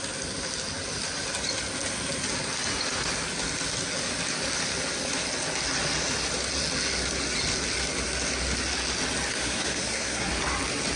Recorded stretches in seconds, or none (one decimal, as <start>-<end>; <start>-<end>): 0.0-9.3; 10.3-11.0